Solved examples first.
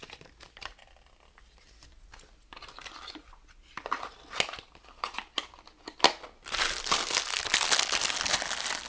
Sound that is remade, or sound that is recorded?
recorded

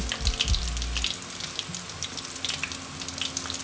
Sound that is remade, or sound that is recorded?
recorded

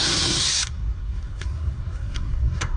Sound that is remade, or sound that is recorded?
remade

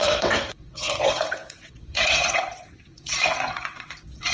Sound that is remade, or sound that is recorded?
remade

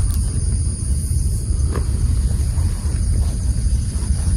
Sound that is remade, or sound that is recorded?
remade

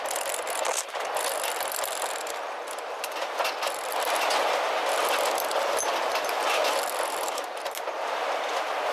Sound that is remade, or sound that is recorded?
recorded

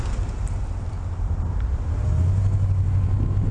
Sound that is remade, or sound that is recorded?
recorded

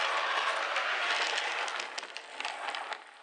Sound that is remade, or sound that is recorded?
recorded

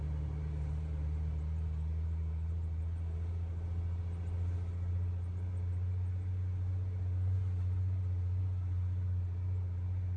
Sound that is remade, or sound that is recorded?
recorded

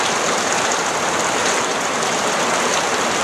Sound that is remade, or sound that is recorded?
remade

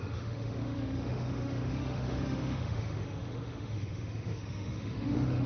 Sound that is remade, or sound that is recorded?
remade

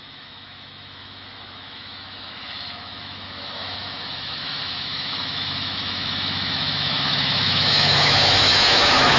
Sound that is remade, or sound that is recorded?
remade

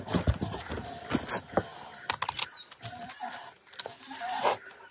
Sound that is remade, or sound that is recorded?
recorded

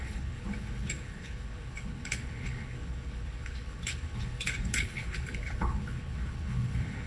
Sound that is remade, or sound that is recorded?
remade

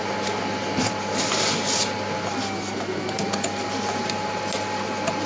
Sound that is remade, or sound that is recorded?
recorded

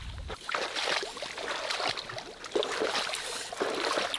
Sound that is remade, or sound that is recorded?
recorded